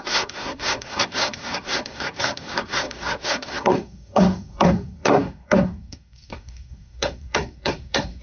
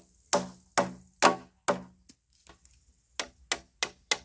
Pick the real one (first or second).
second